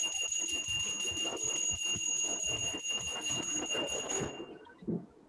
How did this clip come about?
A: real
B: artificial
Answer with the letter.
A